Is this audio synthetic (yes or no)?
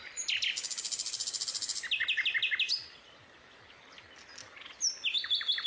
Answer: no